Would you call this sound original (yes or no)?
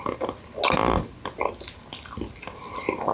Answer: yes